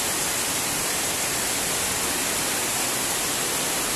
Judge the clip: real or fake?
fake